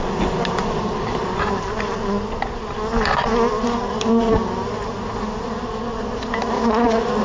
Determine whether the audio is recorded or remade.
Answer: recorded